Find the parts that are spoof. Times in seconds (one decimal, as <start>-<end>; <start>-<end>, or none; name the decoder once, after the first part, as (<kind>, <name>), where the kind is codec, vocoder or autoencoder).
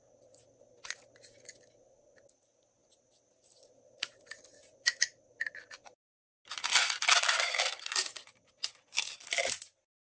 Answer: none